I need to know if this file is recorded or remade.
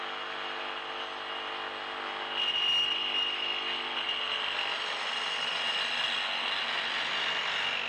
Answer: recorded